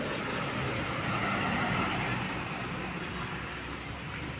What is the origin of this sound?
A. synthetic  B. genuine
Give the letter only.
B